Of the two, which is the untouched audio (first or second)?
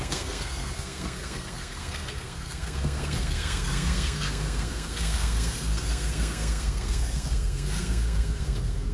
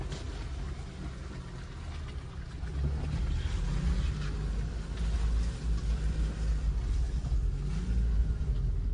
second